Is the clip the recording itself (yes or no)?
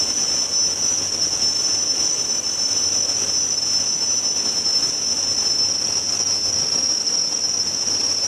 yes